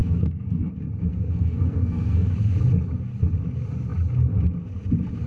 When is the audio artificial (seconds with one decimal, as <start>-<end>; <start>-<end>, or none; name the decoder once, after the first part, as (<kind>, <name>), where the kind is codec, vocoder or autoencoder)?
0.0-0.7 (codec, SNAC); 1.1-2.3